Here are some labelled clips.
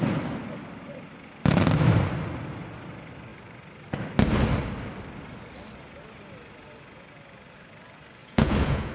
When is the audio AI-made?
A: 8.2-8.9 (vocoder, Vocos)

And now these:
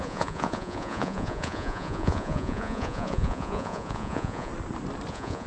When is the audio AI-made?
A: 0.0-4.5 (vocoder, Vocos); 5.1-5.5

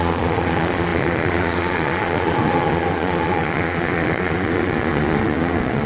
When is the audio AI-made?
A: 0.0-5.9 (vocoder, Vocos)

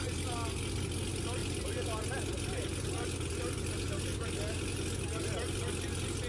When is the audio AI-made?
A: none

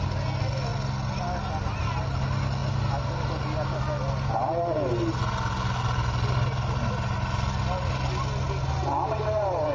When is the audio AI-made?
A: none

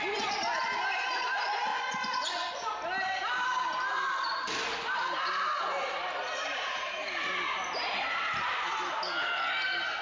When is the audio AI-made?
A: 1.7-2.5 (vocoder, Vocos)